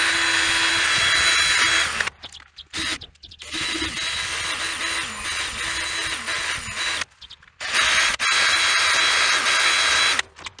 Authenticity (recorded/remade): recorded